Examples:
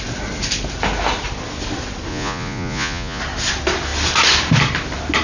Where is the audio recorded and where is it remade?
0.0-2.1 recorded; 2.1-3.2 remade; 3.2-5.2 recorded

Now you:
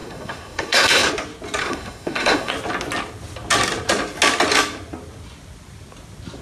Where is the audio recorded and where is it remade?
0.0-1.1 remade; 1.1-1.6 recorded; 1.6-2.5 remade; 2.5-6.4 recorded

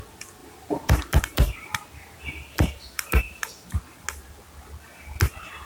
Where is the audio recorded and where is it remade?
0.0-0.4 recorded; 0.4-3.8 remade; 3.8-5.6 recorded